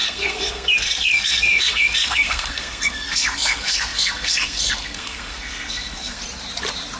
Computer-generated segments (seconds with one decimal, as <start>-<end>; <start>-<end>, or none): 0.0-6.2